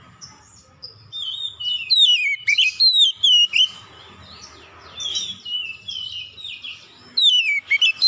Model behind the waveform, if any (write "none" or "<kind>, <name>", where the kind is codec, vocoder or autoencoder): none